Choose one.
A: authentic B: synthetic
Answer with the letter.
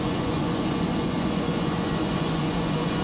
B